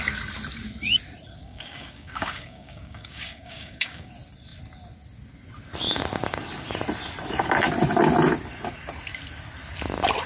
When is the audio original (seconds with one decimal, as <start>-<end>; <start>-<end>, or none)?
0.0-1.4; 4.1-10.3